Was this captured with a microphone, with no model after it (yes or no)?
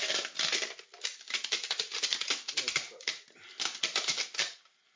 yes